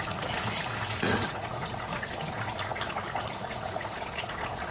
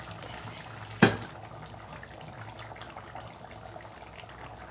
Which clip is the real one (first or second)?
second